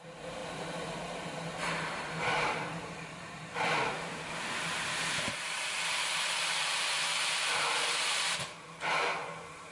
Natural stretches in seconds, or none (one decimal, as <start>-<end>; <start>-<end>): none